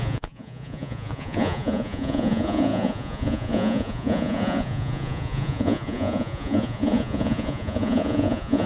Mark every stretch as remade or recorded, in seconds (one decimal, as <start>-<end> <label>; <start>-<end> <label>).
0.0-8.7 remade